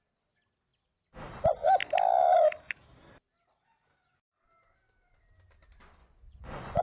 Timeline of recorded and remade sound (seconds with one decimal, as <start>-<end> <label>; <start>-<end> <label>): 0.0-6.0 recorded; 6.0-6.8 remade